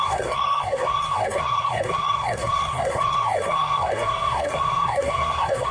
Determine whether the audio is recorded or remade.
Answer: remade